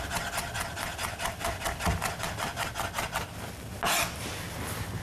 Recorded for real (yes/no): yes